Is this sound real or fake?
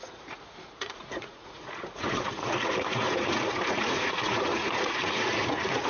fake